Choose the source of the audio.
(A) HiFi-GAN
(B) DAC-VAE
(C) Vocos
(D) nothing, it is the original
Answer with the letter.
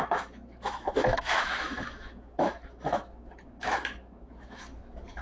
B